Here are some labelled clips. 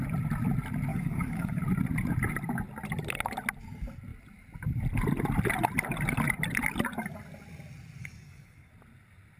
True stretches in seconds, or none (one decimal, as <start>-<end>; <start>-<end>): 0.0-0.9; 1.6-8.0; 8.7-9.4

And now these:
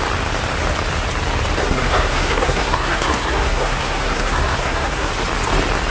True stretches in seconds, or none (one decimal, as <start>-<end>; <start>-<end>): 0.0-1.6; 5.1-5.9

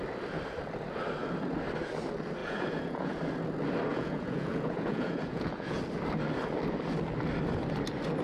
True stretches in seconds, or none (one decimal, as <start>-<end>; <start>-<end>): 0.0-2.4; 3.2-3.9; 5.8-8.2

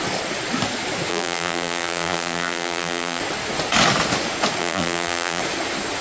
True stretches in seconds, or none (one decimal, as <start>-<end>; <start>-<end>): 0.0-1.1; 3.2-4.6; 5.4-6.0

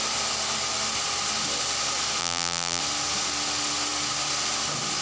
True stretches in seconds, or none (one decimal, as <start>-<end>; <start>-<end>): 0.0-2.2; 2.8-5.0

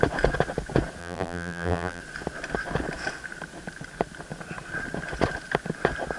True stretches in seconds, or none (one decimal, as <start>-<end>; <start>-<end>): 0.0-1.0; 2.0-6.2

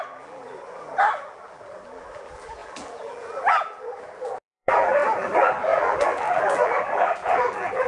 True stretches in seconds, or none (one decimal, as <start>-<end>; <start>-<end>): none

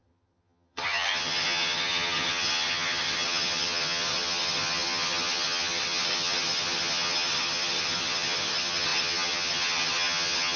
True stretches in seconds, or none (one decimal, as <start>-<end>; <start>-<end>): none